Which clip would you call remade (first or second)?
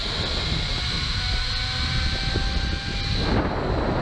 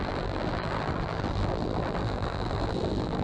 second